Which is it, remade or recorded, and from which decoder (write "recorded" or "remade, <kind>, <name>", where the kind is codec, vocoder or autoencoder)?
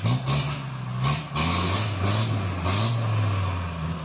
recorded